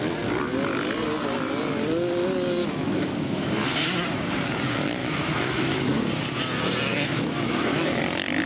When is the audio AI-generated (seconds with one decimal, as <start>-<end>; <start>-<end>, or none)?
2.6-3.5; 5.0-6.1; 6.9-8.0